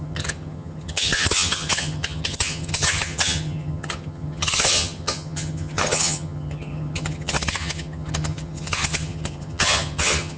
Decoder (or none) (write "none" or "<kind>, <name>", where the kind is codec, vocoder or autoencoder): vocoder, HiFi-GAN